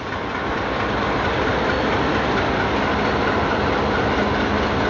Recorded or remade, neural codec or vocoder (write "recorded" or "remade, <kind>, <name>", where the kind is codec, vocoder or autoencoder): recorded